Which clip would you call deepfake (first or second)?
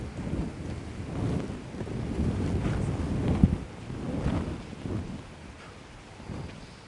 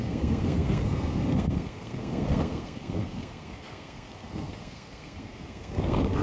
second